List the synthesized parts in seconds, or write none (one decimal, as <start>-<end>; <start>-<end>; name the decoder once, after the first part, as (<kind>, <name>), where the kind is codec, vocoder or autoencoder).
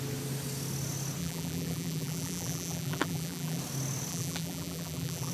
1.2-3.6 (vocoder, BigVGAN v2); 4.1-5.3